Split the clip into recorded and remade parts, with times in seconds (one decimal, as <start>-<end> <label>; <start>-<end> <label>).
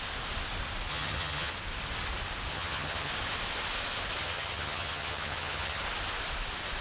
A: 0.0-0.9 recorded; 0.9-1.5 remade; 1.5-2.5 recorded; 2.5-3.1 remade; 3.1-4.2 recorded; 4.2-5.8 remade; 5.8-6.8 recorded